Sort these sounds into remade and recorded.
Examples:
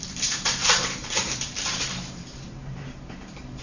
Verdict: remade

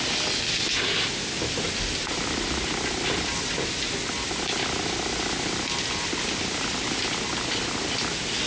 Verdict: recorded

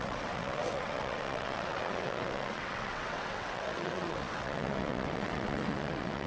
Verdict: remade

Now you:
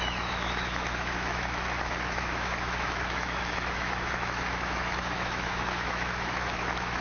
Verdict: remade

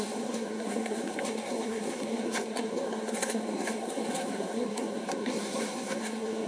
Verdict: remade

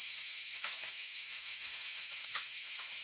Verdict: remade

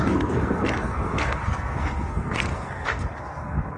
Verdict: remade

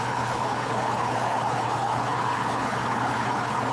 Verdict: remade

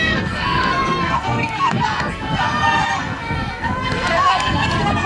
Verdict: remade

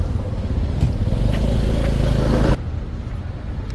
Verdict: recorded